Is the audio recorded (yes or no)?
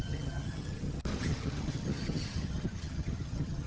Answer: no